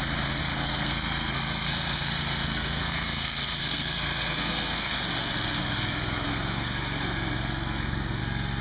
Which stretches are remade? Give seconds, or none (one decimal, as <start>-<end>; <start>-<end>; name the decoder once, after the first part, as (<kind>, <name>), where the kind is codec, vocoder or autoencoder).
0.4-5.0 (codec, SNAC); 5.6-8.2